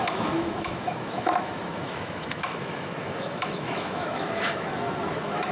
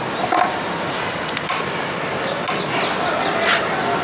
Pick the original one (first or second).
second